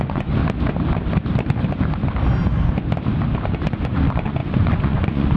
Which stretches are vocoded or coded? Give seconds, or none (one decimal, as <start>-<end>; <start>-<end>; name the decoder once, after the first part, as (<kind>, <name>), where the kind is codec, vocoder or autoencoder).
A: 0.0-0.4 (vocoder, Vocos); 3.6-5.4